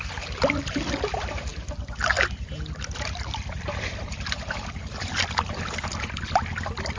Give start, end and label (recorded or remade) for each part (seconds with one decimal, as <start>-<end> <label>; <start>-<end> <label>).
0.0-7.0 recorded